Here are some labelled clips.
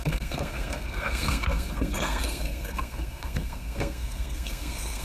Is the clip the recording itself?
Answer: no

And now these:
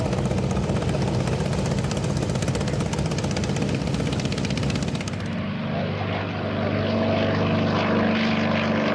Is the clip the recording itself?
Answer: yes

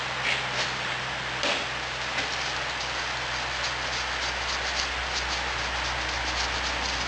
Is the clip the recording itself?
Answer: yes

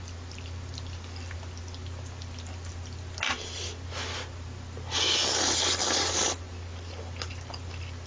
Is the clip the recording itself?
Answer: yes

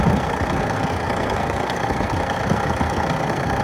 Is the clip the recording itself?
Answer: no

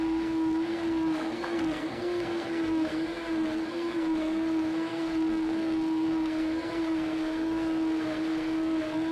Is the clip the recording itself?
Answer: no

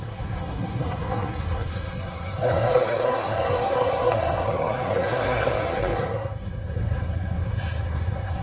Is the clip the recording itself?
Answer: no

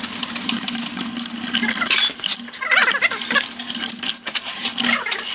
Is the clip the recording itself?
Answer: yes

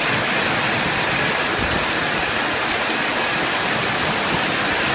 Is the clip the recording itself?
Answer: yes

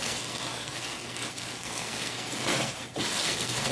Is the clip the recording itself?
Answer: no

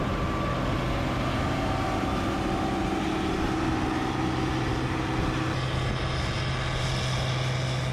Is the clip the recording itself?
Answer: yes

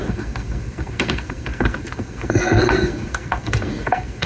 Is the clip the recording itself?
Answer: no